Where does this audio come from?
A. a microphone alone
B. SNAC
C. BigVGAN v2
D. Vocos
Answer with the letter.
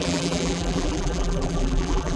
C